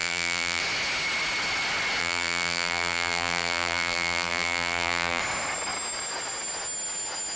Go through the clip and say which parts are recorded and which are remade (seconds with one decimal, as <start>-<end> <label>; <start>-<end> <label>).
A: 0.0-0.6 remade; 0.6-2.0 recorded; 2.0-5.2 remade; 5.2-7.4 recorded